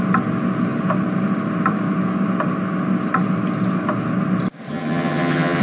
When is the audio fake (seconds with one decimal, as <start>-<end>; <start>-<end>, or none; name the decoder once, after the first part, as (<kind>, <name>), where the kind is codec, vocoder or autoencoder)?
4.7-5.6 (vocoder, HiFi-GAN)